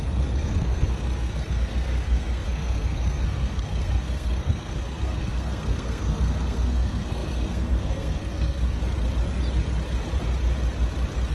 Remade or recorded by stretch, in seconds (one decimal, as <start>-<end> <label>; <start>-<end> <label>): 0.0-8.8 remade; 8.8-11.3 recorded